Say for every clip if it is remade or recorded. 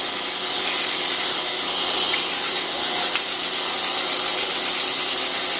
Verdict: recorded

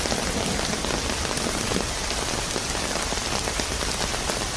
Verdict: recorded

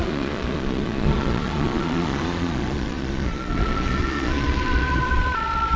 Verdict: remade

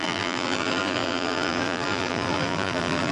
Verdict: remade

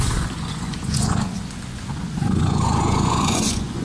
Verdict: remade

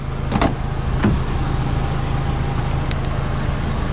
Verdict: recorded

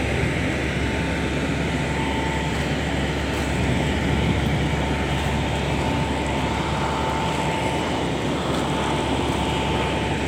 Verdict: recorded